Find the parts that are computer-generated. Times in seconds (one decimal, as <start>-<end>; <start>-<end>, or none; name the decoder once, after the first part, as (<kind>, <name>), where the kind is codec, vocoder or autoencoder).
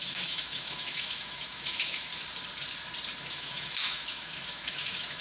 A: 0.0-2.1 (autoencoder, DAC-VAE); 3.2-5.2